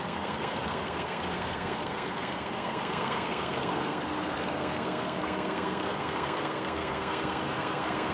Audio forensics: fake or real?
fake